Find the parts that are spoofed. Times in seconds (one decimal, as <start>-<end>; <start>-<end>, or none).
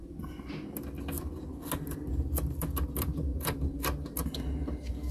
none